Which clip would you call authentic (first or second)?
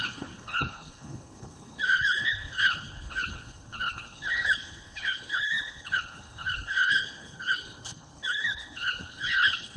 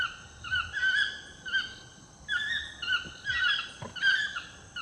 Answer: second